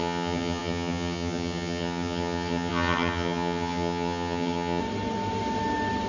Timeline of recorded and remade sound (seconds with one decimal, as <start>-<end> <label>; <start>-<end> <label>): 0.0-4.8 remade; 4.8-6.1 recorded